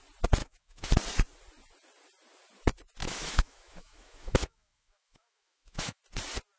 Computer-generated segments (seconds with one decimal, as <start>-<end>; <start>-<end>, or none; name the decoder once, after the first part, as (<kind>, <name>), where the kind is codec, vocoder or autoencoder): 0.4-0.9 (autoencoder, DAC-VAE); 3.0-6.0